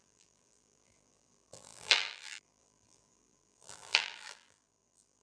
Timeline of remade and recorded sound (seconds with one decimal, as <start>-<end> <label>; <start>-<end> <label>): 0.0-5.2 remade